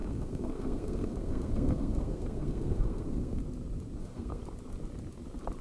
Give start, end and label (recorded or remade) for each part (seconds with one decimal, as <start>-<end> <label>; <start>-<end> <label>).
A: 0.0-3.4 remade; 3.4-4.0 recorded; 4.0-4.4 remade; 4.4-5.6 recorded

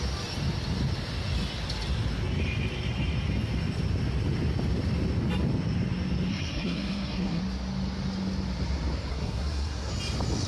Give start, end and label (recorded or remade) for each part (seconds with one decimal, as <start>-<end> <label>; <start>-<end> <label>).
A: 0.0-6.3 recorded; 6.3-7.4 remade; 7.4-9.1 recorded; 9.1-9.9 remade; 9.9-10.5 recorded